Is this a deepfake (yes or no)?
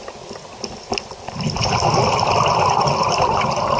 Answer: no